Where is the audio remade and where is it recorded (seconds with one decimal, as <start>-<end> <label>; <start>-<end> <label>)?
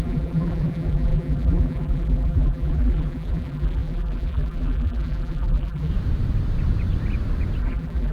0.0-5.9 remade; 5.9-7.6 recorded; 7.6-8.1 remade